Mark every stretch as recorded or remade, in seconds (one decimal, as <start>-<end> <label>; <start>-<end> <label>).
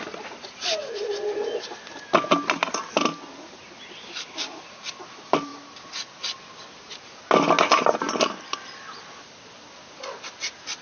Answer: 0.0-10.8 recorded